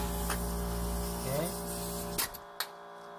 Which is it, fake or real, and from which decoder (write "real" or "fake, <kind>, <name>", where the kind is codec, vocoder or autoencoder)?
real